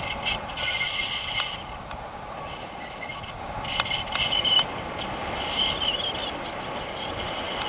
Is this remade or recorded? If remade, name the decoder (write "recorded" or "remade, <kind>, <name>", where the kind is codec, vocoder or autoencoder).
recorded